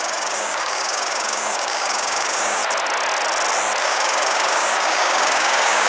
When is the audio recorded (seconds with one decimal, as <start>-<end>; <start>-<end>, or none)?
2.6-3.8